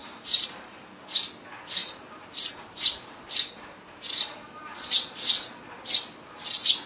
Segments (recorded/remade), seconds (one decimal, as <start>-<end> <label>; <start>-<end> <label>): 0.0-1.1 remade; 1.1-1.8 recorded; 1.8-5.3 remade; 5.3-6.9 recorded